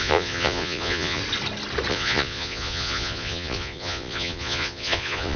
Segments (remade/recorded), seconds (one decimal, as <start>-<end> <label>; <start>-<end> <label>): 0.0-1.2 remade; 1.2-1.9 recorded; 1.9-5.4 remade